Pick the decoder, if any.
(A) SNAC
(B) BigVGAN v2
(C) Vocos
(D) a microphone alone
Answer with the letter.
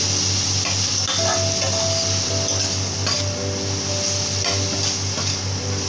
D